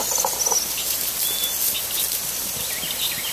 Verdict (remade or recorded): recorded